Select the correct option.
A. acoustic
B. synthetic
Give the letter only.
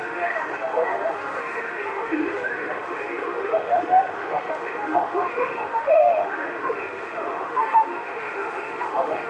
B